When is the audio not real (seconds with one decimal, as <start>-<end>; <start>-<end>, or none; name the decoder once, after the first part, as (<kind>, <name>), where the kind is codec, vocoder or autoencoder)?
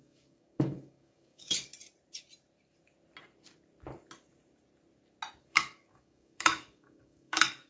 0.0-1.7 (codec, DAC); 5.4-7.7